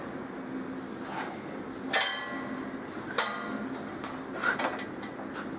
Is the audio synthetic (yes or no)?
no